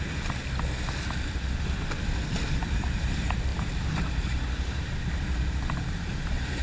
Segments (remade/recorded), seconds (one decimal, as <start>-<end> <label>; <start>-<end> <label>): 0.0-0.4 remade; 0.4-2.6 recorded; 2.6-6.6 remade